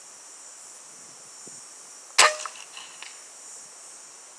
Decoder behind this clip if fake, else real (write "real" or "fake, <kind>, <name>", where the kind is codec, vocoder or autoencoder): real